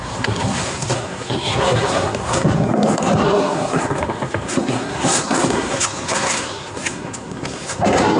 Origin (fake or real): fake